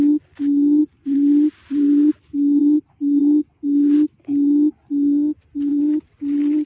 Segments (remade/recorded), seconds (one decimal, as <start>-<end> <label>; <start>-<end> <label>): 0.0-0.8 recorded; 0.8-2.1 remade; 2.1-2.6 recorded; 2.6-3.2 remade; 3.2-5.7 recorded; 5.7-6.7 remade